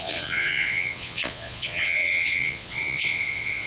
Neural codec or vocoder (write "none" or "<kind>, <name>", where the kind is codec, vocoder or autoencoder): vocoder, Vocos